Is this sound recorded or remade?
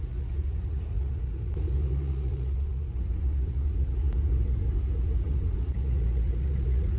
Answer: remade